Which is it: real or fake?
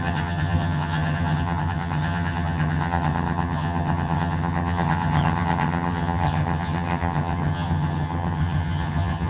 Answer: fake